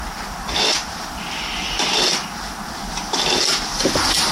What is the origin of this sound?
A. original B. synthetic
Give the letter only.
A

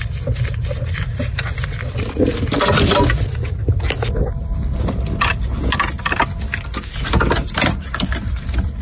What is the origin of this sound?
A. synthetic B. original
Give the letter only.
B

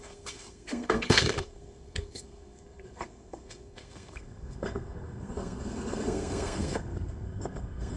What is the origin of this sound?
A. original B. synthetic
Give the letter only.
B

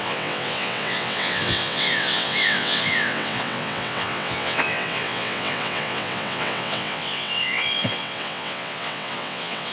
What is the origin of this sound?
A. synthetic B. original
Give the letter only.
A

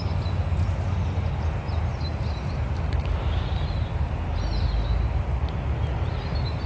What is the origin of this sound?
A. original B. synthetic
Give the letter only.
A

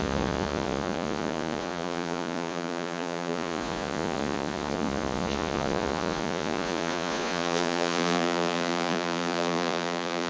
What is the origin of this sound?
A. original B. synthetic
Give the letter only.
B